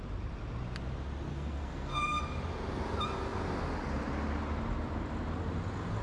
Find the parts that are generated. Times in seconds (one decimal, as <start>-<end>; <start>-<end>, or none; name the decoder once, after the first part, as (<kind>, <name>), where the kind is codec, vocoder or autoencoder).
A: 1.3-2.2 (codec, SNAC)